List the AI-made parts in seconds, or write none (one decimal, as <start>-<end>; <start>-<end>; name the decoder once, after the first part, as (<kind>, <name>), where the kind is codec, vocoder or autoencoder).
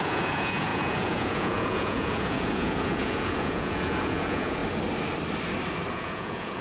0.0-4.6 (vocoder, Vocos); 5.9-6.6